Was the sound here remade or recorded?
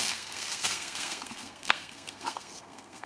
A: remade